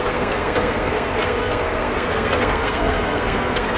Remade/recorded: remade